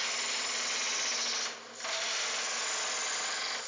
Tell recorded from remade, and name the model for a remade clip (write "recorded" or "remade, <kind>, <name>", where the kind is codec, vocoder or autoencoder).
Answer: recorded